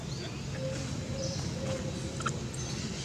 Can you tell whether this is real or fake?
real